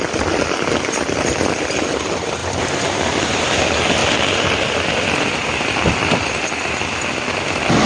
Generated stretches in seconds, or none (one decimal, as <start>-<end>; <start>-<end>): none